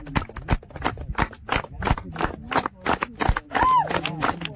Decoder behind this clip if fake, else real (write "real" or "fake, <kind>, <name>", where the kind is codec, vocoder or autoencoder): real